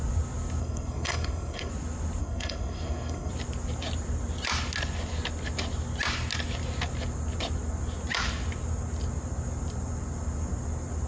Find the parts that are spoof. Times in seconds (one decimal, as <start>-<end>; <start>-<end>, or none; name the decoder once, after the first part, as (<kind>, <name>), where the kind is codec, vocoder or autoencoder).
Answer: 0.6-1.7 (codec, SNAC); 2.2-3.3